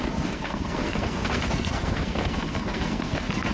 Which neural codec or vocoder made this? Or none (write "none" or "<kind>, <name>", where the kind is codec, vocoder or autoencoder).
codec, SNAC